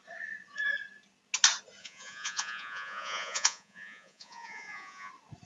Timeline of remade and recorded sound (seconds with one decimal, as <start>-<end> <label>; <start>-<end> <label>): 0.0-1.8 recorded; 1.8-5.1 remade; 5.1-5.5 recorded

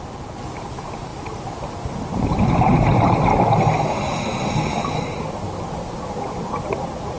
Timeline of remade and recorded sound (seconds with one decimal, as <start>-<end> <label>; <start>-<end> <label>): 0.0-7.2 recorded

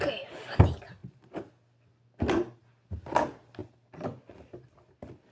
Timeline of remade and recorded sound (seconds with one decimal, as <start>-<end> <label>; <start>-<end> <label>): 0.0-3.6 recorded; 3.6-4.5 remade; 4.5-5.3 recorded

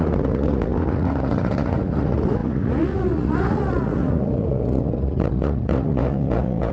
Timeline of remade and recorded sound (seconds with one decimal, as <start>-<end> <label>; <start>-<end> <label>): 0.0-6.7 remade